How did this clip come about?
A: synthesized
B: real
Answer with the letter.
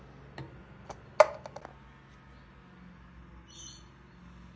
B